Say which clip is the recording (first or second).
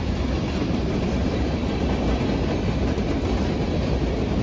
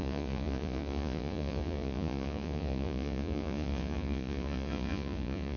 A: first